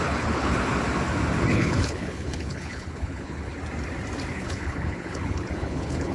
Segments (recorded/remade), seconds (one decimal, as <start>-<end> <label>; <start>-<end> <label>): 0.0-0.6 remade; 0.6-1.5 recorded; 1.5-3.5 remade; 3.5-4.3 recorded; 4.3-6.1 remade

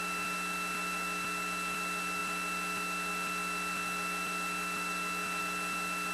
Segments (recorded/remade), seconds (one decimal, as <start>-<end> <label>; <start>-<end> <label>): 0.0-6.1 recorded

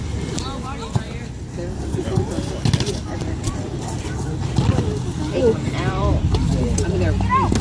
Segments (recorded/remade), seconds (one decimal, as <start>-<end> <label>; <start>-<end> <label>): 0.0-3.0 recorded; 3.0-6.7 remade; 6.7-7.6 recorded

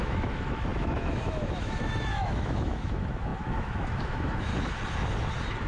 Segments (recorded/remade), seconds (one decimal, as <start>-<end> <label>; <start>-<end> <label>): 0.0-4.5 remade; 4.5-5.7 recorded

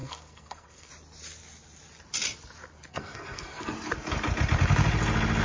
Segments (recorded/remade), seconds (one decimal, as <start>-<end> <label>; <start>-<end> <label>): 0.0-0.9 remade; 0.9-2.9 recorded; 2.9-3.7 remade; 3.7-5.4 recorded

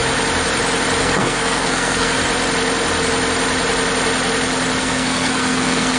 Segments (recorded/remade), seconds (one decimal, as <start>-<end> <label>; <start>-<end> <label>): 0.0-1.0 recorded; 1.0-2.2 remade; 2.2-4.8 recorded; 4.8-6.0 remade

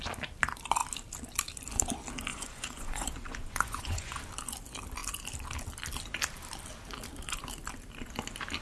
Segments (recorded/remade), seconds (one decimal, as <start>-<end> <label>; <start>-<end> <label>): 0.0-2.3 recorded; 2.3-4.2 remade; 4.2-8.6 recorded